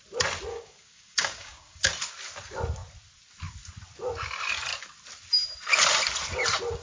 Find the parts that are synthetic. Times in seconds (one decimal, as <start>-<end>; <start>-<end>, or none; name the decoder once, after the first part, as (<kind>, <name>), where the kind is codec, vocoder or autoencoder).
0.5-1.8 (codec, DAC)